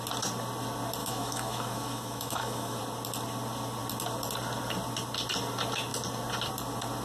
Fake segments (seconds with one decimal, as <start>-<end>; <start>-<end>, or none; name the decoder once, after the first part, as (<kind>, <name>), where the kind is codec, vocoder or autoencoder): 1.0-2.8 (autoencoder, DAC-VAE)